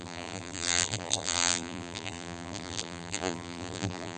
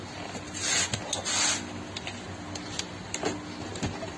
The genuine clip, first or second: second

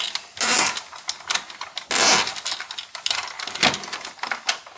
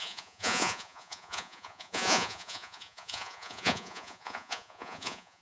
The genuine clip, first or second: first